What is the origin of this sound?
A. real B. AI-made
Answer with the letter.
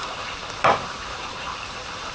B